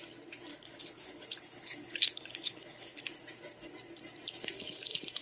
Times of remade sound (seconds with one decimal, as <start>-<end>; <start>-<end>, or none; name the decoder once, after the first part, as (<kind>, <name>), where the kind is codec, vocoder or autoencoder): 0.5-3.0 (codec, HILCodec)

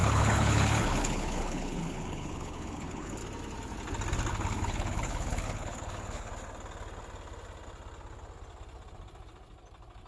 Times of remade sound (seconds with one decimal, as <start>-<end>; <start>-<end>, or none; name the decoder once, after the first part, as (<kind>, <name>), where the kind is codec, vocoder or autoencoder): 0.0-3.2 (codec, HILCodec); 4.3-6.3